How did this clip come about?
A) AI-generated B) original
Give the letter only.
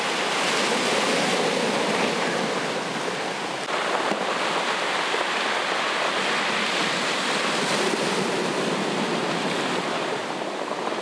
B